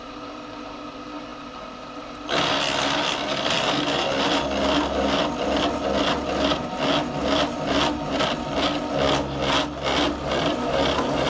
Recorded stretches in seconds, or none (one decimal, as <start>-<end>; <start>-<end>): 0.0-11.3